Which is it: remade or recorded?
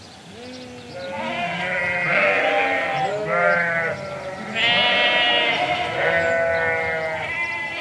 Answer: recorded